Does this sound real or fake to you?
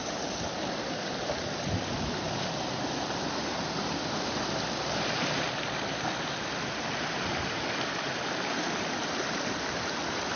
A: fake